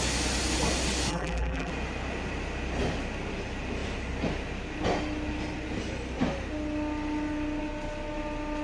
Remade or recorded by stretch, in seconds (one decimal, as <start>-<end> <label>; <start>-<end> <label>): 0.0-1.1 recorded; 1.1-1.7 remade; 1.7-8.6 recorded